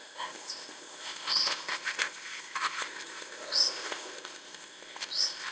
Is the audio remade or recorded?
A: remade